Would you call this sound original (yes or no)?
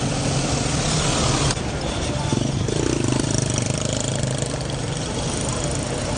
yes